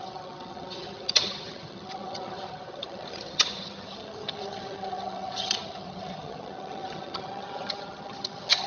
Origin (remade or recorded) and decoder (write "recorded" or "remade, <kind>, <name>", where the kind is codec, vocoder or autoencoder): remade, vocoder, HiFi-GAN